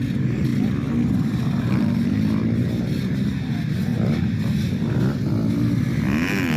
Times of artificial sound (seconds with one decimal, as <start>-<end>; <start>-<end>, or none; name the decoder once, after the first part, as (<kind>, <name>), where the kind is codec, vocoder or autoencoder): 0.5-2.1 (vocoder, BigVGAN v2); 3.9-5.5